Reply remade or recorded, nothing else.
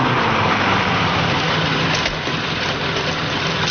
recorded